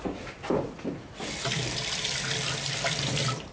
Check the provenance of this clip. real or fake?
fake